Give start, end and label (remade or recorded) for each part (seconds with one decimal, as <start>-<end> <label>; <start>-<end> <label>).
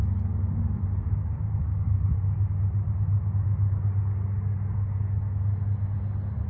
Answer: 0.0-6.5 recorded